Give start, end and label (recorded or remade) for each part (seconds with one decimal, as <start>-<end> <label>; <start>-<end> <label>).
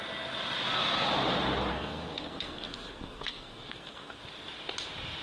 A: 0.0-1.7 recorded; 1.7-4.2 remade; 4.2-5.2 recorded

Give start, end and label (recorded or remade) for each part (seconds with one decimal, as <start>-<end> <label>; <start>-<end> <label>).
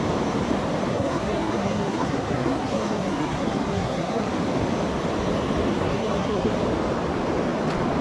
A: 0.0-0.9 recorded; 0.9-4.3 remade; 4.3-5.7 recorded; 5.7-6.5 remade; 6.5-8.0 recorded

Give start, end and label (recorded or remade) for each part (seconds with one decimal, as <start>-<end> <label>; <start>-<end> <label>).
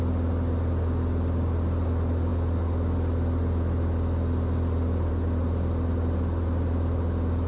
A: 0.0-7.5 recorded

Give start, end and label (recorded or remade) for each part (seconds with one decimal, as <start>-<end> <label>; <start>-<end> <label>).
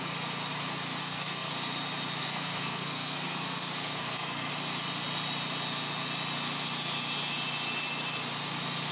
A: 0.0-1.0 recorded; 1.0-1.5 remade; 1.5-2.2 recorded; 2.2-4.5 remade; 4.5-8.9 recorded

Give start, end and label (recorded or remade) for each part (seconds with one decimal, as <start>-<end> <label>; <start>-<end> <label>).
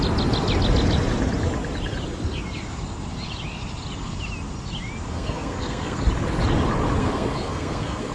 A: 0.0-5.1 recorded; 5.1-6.0 remade; 6.0-7.0 recorded; 7.0-8.1 remade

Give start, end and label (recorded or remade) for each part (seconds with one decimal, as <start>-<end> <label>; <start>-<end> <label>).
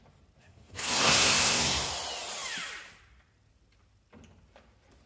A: 0.0-0.4 recorded; 0.4-1.9 remade; 1.9-5.1 recorded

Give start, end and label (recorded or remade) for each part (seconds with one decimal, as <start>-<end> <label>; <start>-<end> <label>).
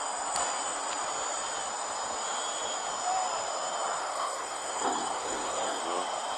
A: 0.0-4.0 recorded; 4.0-5.8 remade; 5.8-6.4 recorded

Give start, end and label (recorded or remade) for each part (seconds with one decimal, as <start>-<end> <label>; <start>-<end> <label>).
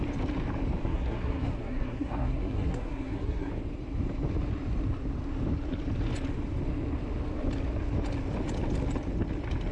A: 0.0-0.8 recorded; 0.8-3.5 remade; 3.5-9.7 recorded